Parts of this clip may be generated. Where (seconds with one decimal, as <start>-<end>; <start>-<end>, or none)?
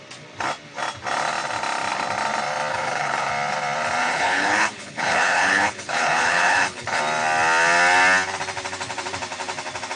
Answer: 2.7-3.3; 4.0-7.0